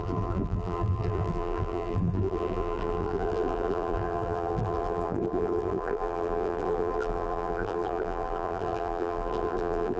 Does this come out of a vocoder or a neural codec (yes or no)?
yes